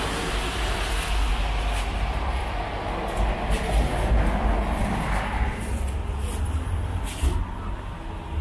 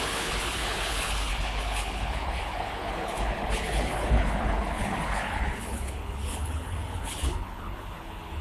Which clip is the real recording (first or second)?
first